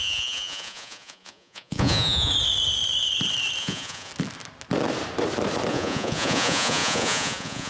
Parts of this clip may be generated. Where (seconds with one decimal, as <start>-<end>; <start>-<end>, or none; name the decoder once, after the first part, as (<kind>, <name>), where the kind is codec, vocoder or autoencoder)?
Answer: 0.0-2.3 (vocoder, Vocos); 3.6-4.1; 5.7-7.7